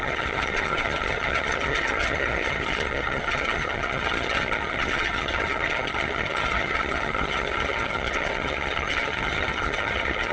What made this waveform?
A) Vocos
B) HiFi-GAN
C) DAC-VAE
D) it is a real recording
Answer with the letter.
B